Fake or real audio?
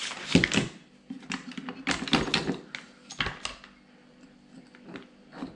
real